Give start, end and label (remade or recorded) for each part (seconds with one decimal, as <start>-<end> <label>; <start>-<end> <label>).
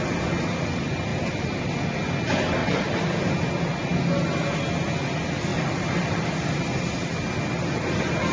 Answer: 0.0-1.1 recorded; 1.1-1.8 remade; 1.8-2.6 recorded; 2.6-3.3 remade; 3.3-5.5 recorded; 5.5-6.8 remade; 6.8-8.3 recorded